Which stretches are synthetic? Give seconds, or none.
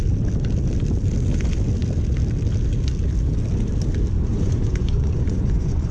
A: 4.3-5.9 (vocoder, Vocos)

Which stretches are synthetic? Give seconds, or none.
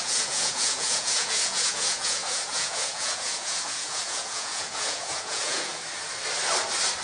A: 0.0-5.7 (vocoder, Vocos)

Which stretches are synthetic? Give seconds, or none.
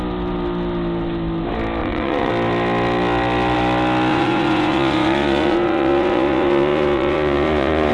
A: 1.8-2.3 (vocoder, Vocos); 4.1-7.9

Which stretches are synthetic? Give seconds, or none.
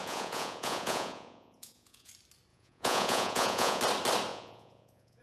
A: 0.0-2.1 (vocoder, Vocos); 2.5-3.8; 4.3-5.2